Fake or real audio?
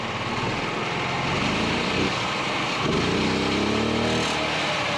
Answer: real